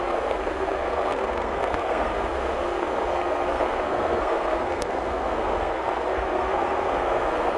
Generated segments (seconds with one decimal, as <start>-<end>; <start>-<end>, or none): 0.0-7.6